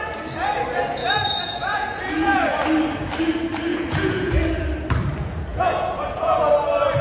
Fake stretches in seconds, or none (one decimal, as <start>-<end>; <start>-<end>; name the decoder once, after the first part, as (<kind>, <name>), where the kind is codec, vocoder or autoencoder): 1.0-2.4 (vocoder, Vocos); 3.7-4.3; 5.5-6.5